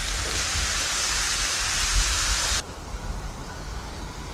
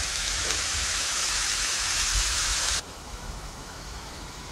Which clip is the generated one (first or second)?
second